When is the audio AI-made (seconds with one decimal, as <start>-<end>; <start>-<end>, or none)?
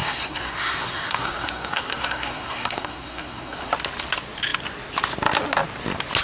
0.0-3.7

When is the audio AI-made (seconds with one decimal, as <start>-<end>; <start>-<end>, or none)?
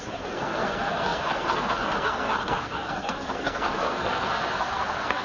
0.0-5.2